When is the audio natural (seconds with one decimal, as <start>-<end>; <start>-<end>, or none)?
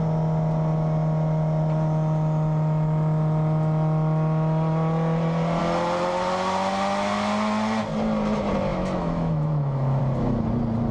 0.0-8.7; 10.0-10.9